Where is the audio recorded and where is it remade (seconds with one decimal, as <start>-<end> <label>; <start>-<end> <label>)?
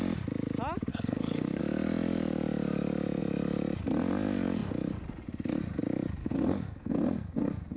0.0-0.9 recorded; 0.9-1.6 remade; 1.6-6.2 recorded; 6.2-7.8 remade